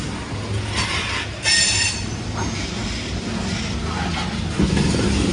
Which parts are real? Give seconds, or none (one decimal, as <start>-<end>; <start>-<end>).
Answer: 0.0-5.3